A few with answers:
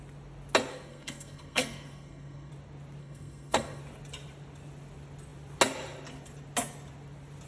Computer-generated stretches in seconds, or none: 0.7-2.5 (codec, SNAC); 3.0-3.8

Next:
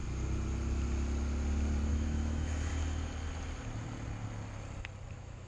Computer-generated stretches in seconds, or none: 1.9-2.7 (autoencoder, DAC-VAE); 5.1-5.5

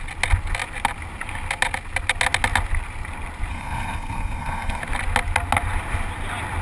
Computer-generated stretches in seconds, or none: 3.5-4.8 (codec, SNAC)

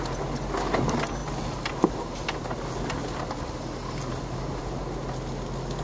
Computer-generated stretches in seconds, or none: none

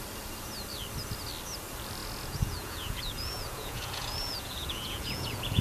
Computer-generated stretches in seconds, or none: 2.0-5.6 (vocoder, Vocos)

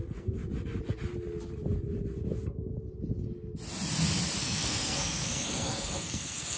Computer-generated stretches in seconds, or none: 0.0-0.4 (codec, SNAC); 4.4-6.6

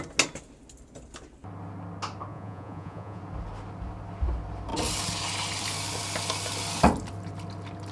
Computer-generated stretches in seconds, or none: 2.3-3.2 (vocoder, Vocos)

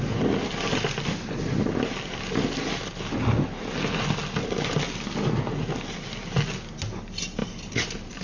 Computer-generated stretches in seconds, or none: 7.4-8.2 (vocoder, BigVGAN v2)